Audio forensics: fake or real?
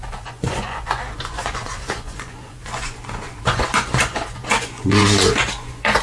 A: fake